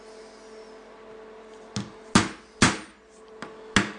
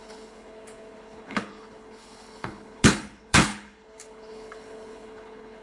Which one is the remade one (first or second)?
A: second